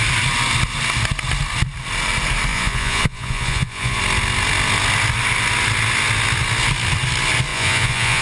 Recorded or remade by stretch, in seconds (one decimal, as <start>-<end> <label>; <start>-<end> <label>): 0.0-2.5 recorded; 2.5-4.0 remade; 4.0-7.5 recorded; 7.5-8.2 remade